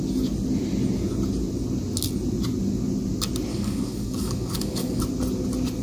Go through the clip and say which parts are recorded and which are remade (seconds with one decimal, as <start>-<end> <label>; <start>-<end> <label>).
0.0-3.5 recorded; 3.5-5.0 remade; 5.0-5.8 recorded